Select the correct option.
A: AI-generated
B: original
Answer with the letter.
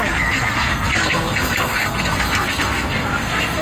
A